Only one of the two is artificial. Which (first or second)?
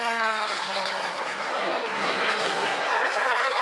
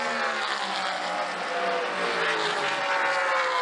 first